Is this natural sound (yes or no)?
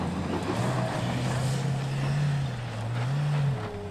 yes